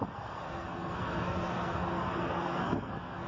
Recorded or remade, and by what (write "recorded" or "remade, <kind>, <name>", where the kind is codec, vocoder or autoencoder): remade, codec, SNAC